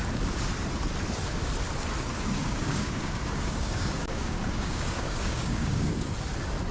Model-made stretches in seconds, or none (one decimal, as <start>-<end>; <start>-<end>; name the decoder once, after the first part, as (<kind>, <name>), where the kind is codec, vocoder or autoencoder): 2.1-6.1 (codec, DAC)